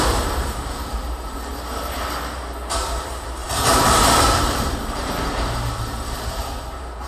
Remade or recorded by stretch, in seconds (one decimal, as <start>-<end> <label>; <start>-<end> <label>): 0.0-1.5 remade; 1.5-2.3 recorded; 2.3-7.1 remade